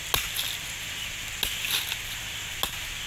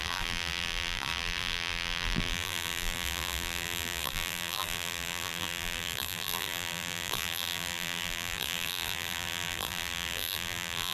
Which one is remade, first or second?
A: second